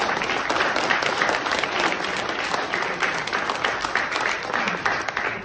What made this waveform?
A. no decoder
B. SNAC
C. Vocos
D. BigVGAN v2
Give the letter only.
D